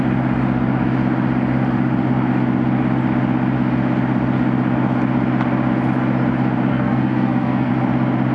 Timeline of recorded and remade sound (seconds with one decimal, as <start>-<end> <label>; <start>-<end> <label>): 0.0-6.7 recorded; 6.7-7.7 remade; 7.7-8.3 recorded